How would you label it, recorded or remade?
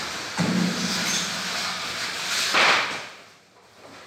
recorded